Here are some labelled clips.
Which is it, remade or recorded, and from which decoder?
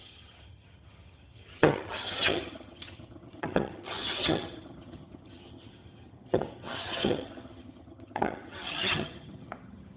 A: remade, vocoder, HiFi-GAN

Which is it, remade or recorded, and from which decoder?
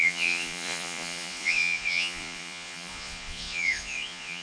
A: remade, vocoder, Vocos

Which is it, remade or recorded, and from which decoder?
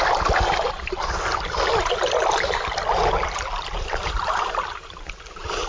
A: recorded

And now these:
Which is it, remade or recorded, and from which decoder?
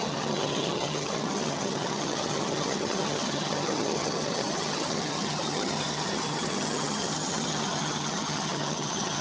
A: remade, vocoder, HiFi-GAN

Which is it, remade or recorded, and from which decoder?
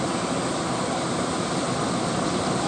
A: recorded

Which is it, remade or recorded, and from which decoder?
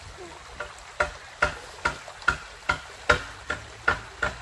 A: recorded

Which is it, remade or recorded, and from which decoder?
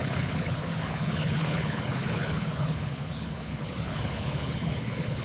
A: remade, codec, HILCodec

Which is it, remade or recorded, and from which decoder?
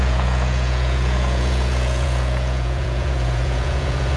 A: remade, vocoder, Vocos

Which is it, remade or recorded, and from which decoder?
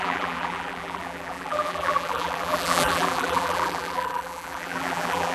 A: remade, vocoder, BigVGAN v2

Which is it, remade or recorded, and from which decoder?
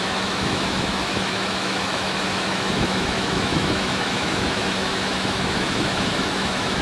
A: remade, autoencoder, DAC-VAE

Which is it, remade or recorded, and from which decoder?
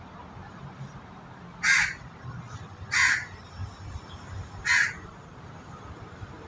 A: recorded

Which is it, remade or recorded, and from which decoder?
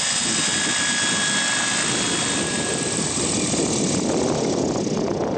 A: recorded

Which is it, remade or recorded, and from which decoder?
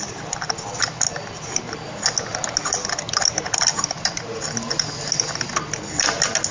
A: recorded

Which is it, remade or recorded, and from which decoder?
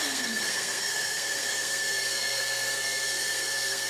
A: remade, codec, SNAC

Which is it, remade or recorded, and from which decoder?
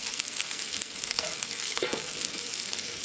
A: remade, codec, SNAC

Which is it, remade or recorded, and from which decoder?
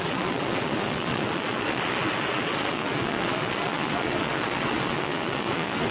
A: remade, vocoder, Vocos